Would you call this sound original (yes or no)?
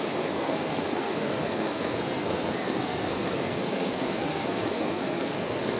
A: no